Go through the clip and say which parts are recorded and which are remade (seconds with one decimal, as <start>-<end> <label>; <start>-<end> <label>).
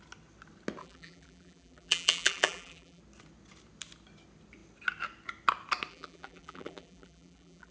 0.0-0.8 recorded; 0.8-3.0 remade; 3.0-5.9 recorded; 5.9-7.7 remade